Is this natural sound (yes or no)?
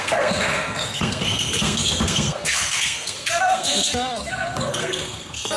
no